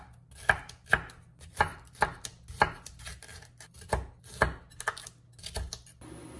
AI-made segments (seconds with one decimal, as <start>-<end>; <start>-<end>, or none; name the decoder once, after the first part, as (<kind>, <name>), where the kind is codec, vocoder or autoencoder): none